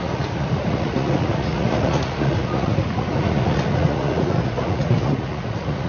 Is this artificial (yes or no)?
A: yes